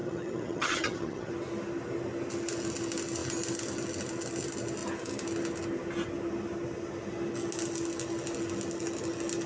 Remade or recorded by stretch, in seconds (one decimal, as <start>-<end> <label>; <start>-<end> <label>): 0.0-1.3 remade; 1.3-9.5 recorded